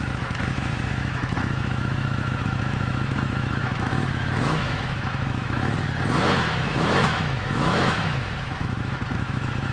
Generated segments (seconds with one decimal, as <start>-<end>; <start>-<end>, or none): 0.0-5.7; 6.3-9.7